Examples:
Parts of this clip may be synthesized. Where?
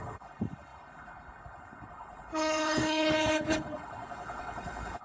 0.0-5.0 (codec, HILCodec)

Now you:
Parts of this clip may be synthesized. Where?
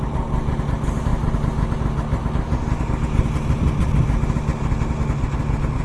none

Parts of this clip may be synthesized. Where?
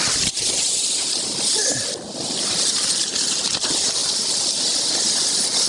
none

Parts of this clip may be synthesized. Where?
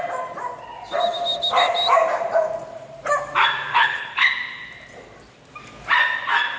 3.7-4.3 (codec, HILCodec)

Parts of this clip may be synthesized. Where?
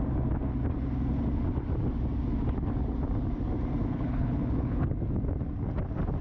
3.8-4.9 (codec, HILCodec)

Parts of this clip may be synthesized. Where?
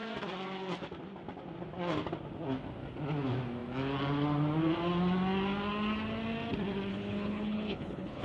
6.9-8.2 (codec, HILCodec)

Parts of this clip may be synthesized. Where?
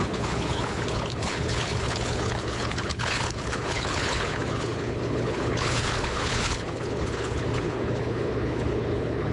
0.0-9.3 (codec, HILCodec)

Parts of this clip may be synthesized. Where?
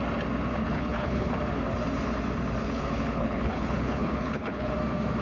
0.6-1.3 (codec, HILCodec); 2.6-4.7